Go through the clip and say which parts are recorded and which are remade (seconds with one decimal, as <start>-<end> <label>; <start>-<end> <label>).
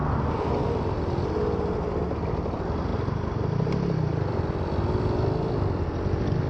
0.0-1.3 remade; 1.3-2.9 recorded; 2.9-5.8 remade; 5.8-6.5 recorded